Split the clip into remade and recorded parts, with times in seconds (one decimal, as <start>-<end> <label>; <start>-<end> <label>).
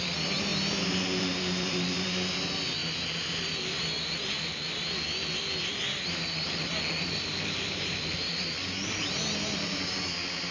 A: 0.0-0.5 remade; 0.5-1.2 recorded; 1.2-2.8 remade; 2.8-7.0 recorded; 7.0-10.5 remade